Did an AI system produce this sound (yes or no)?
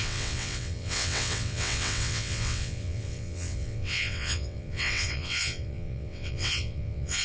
yes